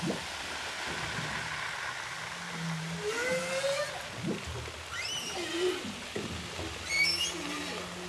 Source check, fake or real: real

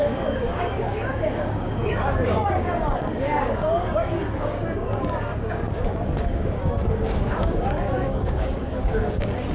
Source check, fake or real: fake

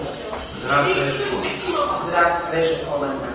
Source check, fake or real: real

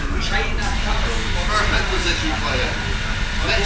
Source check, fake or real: real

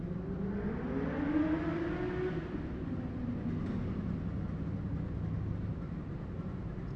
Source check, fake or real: real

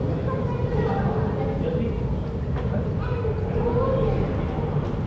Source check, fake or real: real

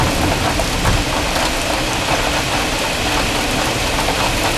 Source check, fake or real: real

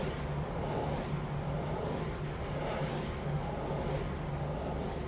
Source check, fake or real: real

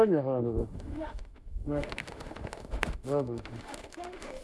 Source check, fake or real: fake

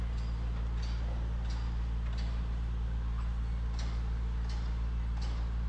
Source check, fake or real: real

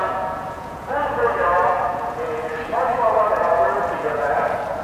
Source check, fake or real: fake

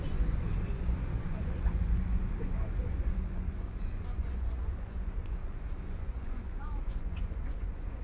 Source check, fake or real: fake